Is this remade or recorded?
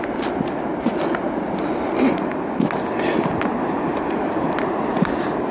recorded